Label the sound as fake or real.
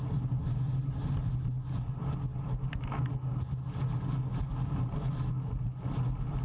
real